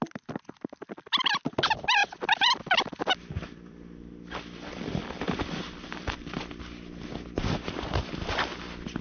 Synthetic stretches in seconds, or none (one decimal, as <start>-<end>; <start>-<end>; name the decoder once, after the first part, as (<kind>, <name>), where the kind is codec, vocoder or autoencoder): 2.0-6.4 (vocoder, BigVGAN v2)